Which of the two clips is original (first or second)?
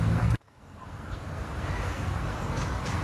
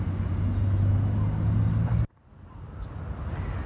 second